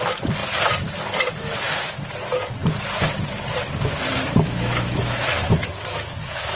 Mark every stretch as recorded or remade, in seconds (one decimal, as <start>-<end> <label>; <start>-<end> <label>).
0.0-4.2 recorded; 4.2-6.6 remade